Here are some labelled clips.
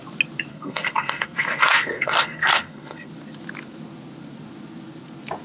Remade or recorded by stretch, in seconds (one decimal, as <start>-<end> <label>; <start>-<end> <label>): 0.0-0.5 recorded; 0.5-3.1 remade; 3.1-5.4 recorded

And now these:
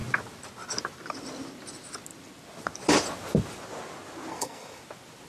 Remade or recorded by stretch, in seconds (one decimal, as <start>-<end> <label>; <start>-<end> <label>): 0.0-4.3 recorded; 4.3-4.8 remade; 4.8-5.3 recorded

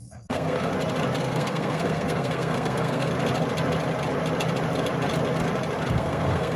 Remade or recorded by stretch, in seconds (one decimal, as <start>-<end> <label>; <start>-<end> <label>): 0.0-0.7 remade; 0.7-1.2 recorded; 1.2-3.1 remade; 3.1-5.9 recorded; 5.9-6.6 remade

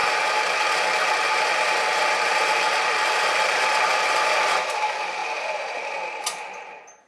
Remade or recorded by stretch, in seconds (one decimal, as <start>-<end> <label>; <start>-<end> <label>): 0.0-7.1 recorded

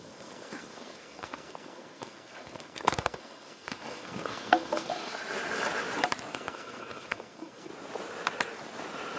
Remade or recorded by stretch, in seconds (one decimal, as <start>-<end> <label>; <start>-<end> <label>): 0.0-4.9 remade; 4.9-6.3 recorded; 6.3-7.7 remade; 7.7-9.2 recorded